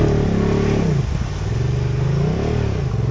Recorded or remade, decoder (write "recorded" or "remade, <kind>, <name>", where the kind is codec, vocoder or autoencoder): recorded